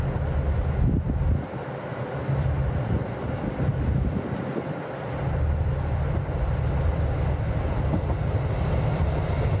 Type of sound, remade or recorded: recorded